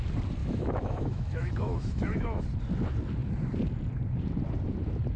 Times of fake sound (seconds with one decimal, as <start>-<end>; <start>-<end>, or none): 0.4-2.4